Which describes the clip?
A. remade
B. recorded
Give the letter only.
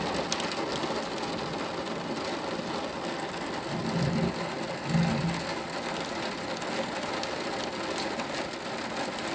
B